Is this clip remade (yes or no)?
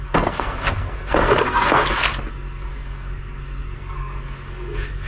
yes